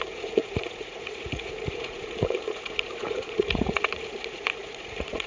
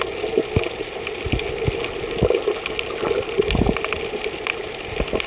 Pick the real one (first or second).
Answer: second